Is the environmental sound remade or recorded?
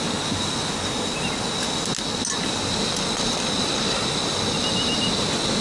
recorded